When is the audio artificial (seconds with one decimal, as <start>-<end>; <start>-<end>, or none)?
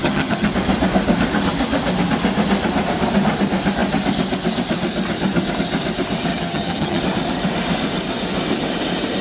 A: 0.0-0.5; 6.3-7.0